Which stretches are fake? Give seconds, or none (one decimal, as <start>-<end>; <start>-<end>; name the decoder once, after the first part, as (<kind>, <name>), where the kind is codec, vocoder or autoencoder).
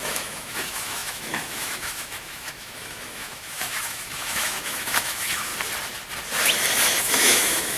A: 0.0-5.5 (autoencoder, DAC-VAE); 7.0-7.8